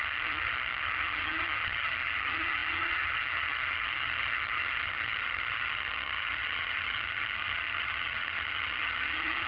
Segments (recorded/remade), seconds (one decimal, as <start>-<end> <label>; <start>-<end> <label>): 0.0-9.5 remade